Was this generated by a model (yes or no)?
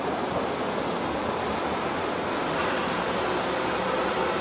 no